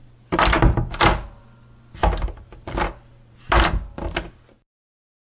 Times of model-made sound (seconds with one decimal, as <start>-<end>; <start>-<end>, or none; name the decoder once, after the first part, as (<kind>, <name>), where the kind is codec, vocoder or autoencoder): none